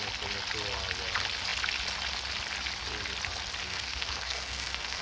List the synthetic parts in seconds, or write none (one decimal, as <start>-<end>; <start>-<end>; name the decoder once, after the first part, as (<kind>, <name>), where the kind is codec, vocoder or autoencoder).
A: 3.6-5.0 (codec, SNAC)